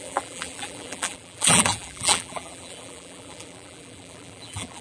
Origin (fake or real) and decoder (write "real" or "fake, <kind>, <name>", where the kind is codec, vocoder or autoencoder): fake, vocoder, BigVGAN v2